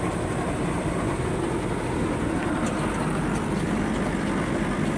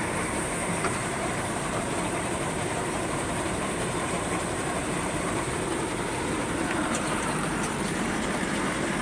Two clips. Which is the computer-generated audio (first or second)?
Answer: second